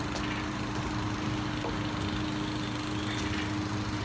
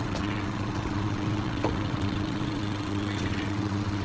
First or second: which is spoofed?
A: second